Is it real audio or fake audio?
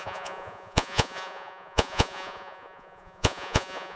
fake